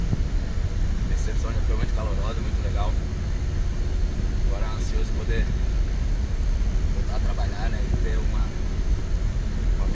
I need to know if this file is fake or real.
real